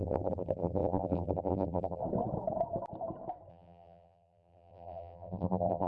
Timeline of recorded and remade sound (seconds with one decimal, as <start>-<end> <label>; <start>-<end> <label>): 0.0-2.0 remade; 2.0-3.5 recorded; 3.5-5.9 remade